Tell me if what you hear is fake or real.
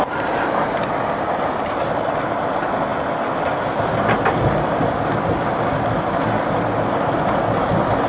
real